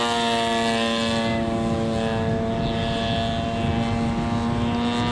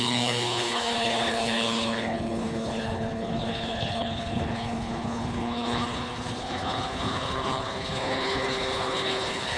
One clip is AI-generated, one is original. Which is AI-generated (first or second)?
second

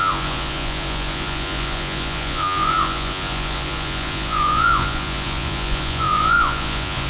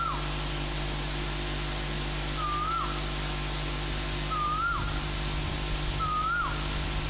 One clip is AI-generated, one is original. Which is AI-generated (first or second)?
first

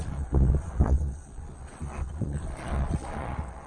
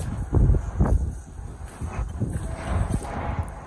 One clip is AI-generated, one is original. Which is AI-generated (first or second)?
first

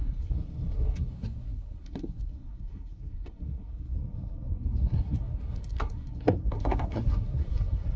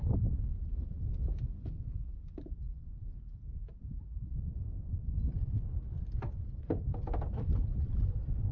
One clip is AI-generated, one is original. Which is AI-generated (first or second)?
first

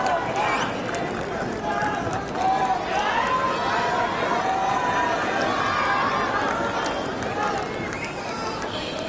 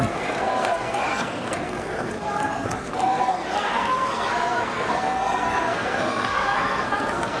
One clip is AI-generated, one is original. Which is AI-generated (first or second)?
second